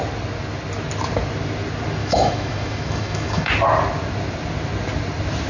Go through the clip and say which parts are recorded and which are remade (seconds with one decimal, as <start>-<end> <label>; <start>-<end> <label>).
0.0-2.0 recorded; 2.0-3.5 remade; 3.5-5.5 recorded